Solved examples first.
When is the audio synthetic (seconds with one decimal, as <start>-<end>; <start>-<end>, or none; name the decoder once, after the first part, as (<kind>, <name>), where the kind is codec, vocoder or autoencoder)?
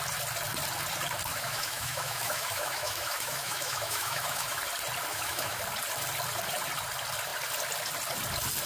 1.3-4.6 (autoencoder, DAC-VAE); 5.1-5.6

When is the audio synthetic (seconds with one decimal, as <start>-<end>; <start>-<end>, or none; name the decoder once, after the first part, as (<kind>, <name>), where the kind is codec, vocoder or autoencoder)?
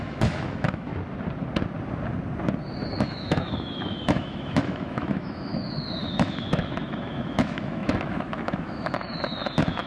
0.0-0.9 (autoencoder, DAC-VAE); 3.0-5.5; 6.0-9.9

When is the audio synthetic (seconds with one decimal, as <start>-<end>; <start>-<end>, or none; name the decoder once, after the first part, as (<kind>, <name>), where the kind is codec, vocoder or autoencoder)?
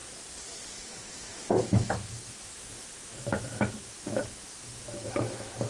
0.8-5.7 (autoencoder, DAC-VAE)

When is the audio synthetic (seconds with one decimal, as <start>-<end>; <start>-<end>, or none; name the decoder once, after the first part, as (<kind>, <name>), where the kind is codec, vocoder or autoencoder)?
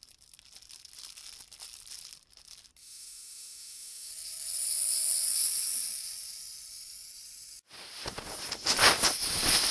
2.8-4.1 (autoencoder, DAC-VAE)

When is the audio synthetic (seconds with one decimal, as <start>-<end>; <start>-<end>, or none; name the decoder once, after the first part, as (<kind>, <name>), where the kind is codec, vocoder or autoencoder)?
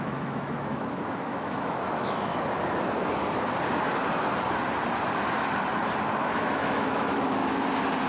0.0-2.3 (autoencoder, DAC-VAE); 6.2-7.4